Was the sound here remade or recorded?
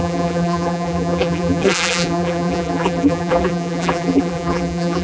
remade